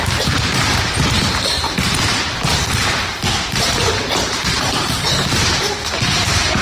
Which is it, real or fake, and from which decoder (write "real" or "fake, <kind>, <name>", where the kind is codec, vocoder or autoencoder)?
fake, vocoder, BigVGAN v2